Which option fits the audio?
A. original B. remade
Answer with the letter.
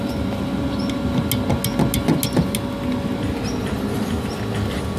A